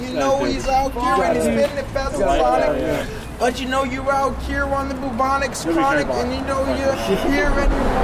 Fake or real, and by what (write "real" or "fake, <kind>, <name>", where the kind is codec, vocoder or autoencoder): real